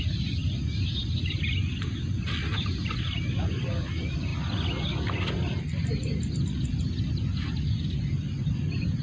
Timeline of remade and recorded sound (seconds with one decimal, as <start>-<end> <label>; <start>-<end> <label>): 0.0-9.0 recorded

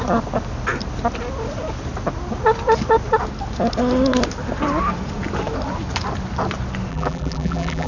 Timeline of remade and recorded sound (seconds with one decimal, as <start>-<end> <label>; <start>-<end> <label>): 0.0-6.9 recorded; 6.9-7.9 remade

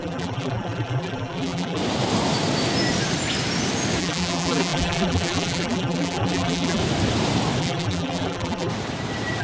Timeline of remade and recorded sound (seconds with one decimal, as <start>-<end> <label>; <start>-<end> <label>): 0.0-1.8 remade; 1.8-4.0 recorded; 4.0-6.8 remade; 6.8-7.6 recorded; 7.6-8.7 remade; 8.7-9.4 recorded